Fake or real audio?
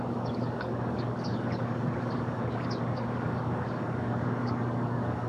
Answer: fake